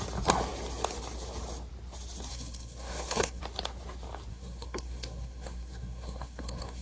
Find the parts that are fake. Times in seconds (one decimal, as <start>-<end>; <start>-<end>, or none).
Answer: 2.3-3.4; 4.3-6.8